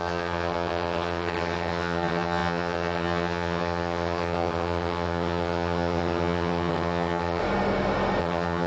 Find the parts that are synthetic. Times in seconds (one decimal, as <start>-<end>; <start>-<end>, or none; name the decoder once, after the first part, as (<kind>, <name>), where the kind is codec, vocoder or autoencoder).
0.0-7.4 (vocoder, HiFi-GAN); 8.2-8.7